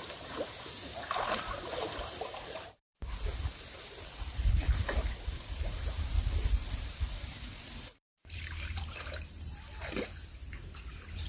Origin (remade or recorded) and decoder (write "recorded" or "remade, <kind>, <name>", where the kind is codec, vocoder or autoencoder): remade, vocoder, BigVGAN v2